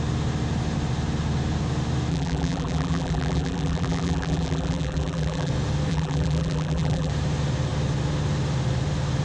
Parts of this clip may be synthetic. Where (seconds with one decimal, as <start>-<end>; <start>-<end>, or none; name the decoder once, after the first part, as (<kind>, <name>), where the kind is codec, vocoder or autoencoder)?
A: 2.1-5.5 (vocoder, BigVGAN v2); 5.9-7.1